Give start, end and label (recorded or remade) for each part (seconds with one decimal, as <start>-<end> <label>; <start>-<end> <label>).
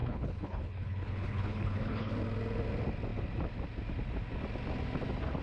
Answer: 0.0-2.1 remade; 2.1-5.4 recorded